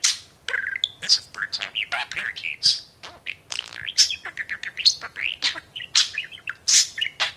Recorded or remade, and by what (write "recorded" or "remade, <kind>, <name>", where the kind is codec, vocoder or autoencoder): recorded